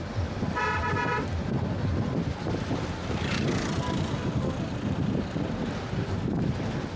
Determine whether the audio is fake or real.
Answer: real